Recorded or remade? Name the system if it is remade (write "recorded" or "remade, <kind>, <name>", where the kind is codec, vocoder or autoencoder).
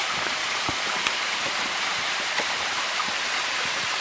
remade, vocoder, BigVGAN v2